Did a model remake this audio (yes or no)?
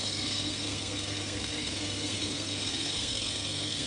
yes